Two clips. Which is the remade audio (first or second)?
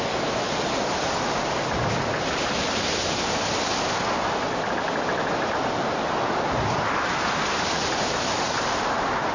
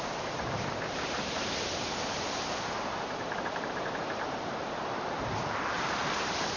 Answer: second